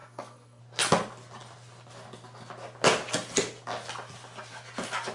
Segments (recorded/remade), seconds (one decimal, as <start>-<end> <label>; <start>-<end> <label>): 0.0-0.6 remade; 0.6-5.1 recorded

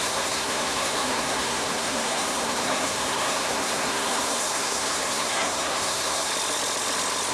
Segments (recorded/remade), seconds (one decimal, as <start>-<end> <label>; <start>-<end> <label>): 0.0-6.3 remade; 6.3-7.3 recorded

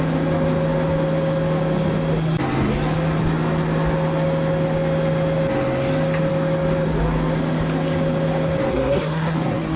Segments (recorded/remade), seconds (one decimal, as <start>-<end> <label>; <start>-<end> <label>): 0.0-8.7 recorded; 8.7-9.8 remade

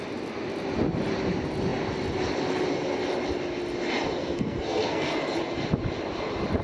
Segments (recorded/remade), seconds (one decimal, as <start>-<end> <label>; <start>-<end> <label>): 0.0-4.2 recorded; 4.2-5.3 remade; 5.3-6.6 recorded